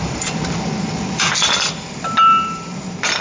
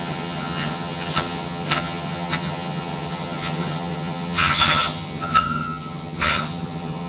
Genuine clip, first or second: first